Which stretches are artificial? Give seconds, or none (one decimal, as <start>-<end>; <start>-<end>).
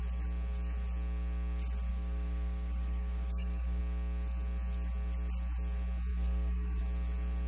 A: 1.9-3.8; 6.1-6.8